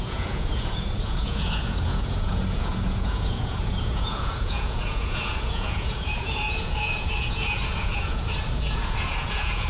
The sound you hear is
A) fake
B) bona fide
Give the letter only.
A